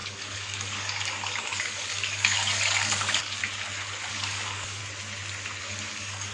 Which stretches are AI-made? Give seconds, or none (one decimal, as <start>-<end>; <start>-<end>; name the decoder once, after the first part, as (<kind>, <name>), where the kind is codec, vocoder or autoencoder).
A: 0.0-3.4 (codec, DAC); 4.1-4.8; 5.6-6.3